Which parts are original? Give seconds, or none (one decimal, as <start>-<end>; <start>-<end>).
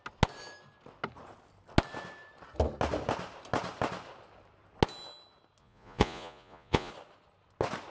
0.0-5.6; 6.9-7.9